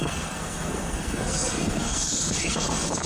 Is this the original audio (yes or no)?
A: no